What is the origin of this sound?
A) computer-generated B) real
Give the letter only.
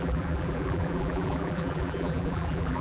A